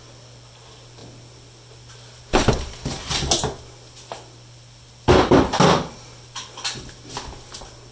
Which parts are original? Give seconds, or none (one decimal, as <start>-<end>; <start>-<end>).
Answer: 0.0-7.9